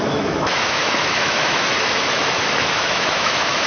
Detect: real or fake fake